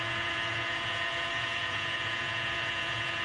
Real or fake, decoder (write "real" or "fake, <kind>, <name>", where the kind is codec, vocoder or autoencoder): fake, vocoder, Vocos